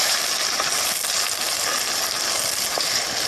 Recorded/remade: recorded